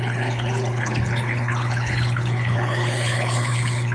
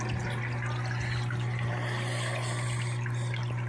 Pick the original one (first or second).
second